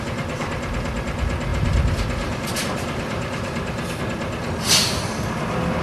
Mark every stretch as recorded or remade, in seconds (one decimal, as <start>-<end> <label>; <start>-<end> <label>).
0.0-1.5 recorded; 1.5-4.0 remade; 4.0-5.8 recorded